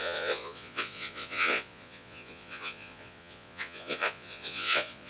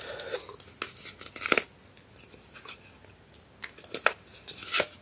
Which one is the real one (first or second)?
second